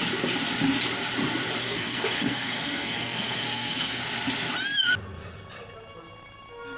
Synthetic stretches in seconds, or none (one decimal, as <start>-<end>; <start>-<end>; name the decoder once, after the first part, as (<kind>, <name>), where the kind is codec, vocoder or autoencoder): 1.6-4.0 (codec, SNAC)